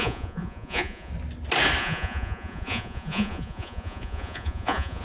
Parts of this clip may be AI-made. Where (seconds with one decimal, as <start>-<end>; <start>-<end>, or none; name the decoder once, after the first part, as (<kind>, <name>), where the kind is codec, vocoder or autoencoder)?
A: 0.0-1.1 (vocoder, Vocos); 1.8-5.0